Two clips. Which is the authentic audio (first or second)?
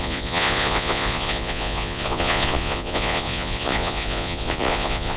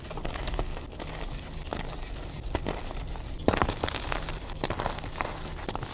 second